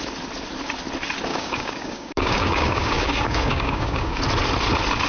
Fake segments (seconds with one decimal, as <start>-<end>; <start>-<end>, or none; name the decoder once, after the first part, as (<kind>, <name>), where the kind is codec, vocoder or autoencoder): 1.3-4.2 (codec, DAC)